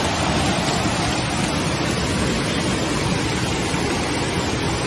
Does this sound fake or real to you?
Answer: real